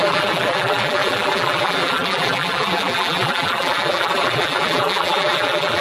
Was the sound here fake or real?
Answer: fake